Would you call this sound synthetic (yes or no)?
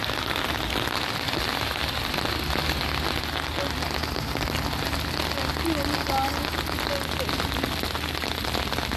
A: no